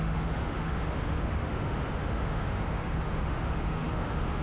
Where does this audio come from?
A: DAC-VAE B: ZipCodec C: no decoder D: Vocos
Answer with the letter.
A